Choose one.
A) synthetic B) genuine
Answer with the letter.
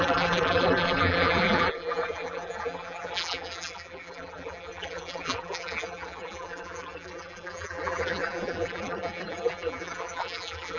A